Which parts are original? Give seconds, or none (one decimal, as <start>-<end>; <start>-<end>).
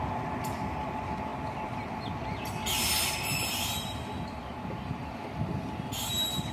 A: 0.0-6.5